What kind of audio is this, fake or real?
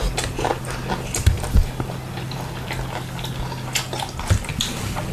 real